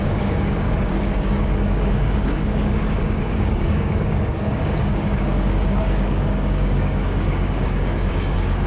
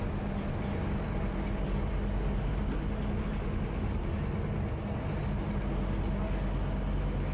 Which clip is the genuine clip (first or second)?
second